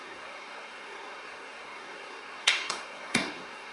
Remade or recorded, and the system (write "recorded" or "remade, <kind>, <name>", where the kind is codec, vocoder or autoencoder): remade, codec, SNAC